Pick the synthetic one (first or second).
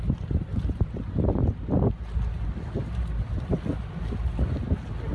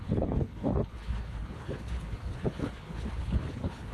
second